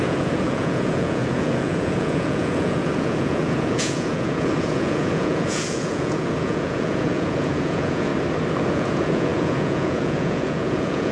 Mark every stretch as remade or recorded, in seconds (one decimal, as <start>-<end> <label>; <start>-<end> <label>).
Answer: 0.0-8.1 remade; 8.1-8.7 recorded; 8.7-11.1 remade